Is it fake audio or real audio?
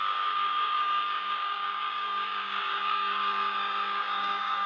fake